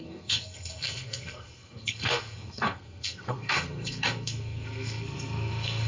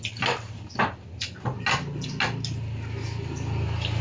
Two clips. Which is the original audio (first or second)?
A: second